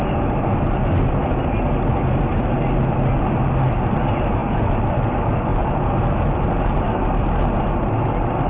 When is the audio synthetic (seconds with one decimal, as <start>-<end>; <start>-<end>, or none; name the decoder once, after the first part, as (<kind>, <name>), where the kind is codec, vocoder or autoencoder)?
none